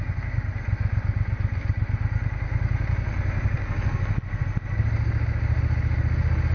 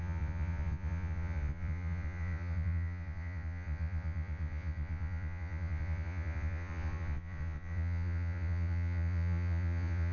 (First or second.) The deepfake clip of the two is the second